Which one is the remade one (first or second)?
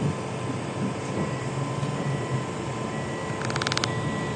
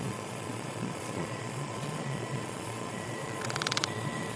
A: second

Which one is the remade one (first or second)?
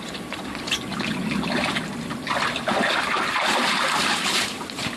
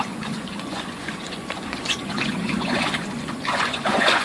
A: second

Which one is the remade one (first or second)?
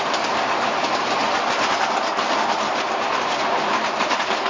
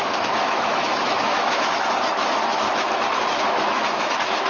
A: second